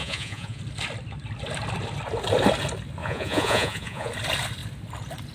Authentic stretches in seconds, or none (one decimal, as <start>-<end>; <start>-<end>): 0.6-3.0; 4.1-5.3